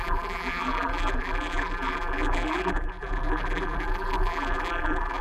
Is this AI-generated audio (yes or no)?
yes